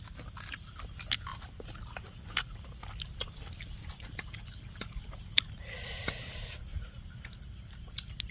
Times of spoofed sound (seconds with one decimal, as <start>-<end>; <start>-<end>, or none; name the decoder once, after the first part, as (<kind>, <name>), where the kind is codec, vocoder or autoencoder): none